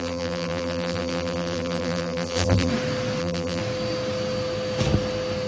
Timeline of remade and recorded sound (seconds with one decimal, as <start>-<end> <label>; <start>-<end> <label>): 0.0-2.7 remade; 2.7-3.2 recorded; 3.2-3.6 remade; 3.6-5.5 recorded